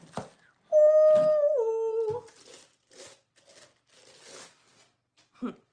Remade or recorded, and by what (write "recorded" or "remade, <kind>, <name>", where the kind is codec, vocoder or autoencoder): recorded